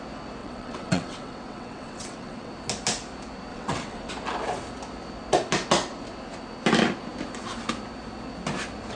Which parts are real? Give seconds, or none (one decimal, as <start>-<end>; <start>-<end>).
0.0-0.4; 2.5-3.5; 4.1-9.0